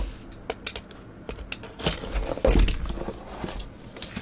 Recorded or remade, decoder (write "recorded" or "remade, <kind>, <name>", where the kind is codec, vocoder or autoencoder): recorded